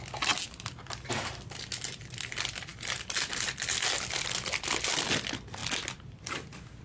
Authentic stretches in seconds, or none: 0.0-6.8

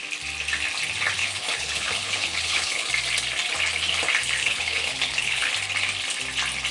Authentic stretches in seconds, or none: 0.0-1.2; 2.9-4.4; 5.5-6.7

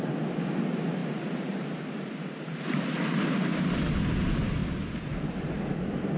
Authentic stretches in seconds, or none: 0.0-6.2

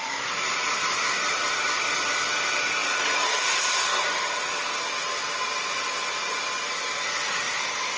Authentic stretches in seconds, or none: 0.0-8.0

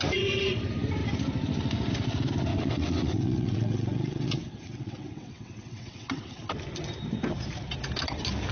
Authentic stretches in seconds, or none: 0.0-2.5; 6.4-8.5

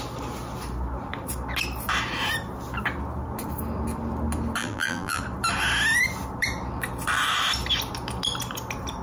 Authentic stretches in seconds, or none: 0.0-4.6; 5.2-9.0